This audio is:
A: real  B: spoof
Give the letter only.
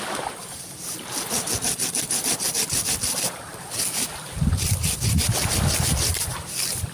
A